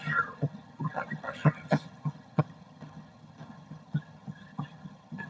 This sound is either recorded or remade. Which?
remade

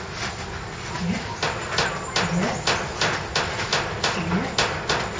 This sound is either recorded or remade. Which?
recorded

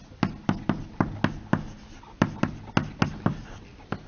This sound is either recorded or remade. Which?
recorded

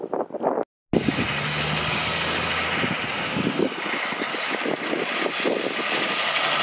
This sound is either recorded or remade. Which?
recorded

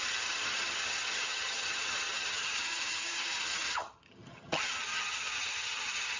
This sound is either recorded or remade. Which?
remade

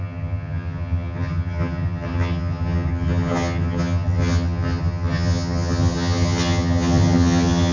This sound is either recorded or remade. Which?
remade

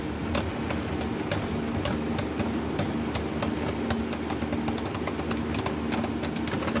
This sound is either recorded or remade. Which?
recorded